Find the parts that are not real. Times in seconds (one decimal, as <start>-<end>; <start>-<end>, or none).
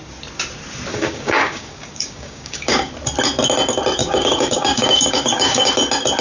0.9-2.9; 4.0-5.7